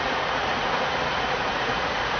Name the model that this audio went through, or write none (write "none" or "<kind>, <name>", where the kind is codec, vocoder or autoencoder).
vocoder, Vocos